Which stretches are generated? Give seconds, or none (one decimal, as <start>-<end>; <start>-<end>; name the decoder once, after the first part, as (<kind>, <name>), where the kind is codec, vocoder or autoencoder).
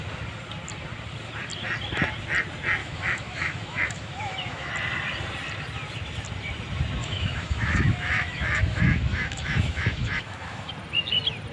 2.8-4.7 (autoencoder, DAC-VAE); 7.0-10.7